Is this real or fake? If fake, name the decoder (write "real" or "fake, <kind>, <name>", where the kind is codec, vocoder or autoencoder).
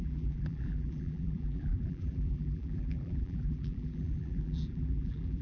fake, vocoder, BigVGAN v2